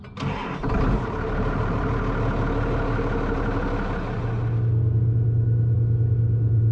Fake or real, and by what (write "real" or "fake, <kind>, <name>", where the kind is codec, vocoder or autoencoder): real